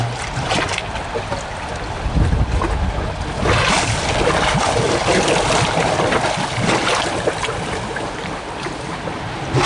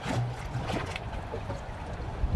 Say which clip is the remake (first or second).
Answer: second